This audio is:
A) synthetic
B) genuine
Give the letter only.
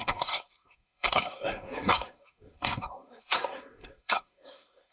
A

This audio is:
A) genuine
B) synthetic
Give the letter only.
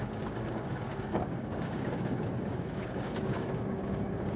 B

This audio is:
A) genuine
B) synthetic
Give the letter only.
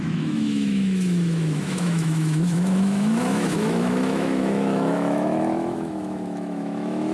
B